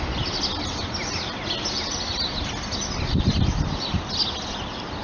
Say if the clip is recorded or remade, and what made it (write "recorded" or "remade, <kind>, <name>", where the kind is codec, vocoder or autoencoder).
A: recorded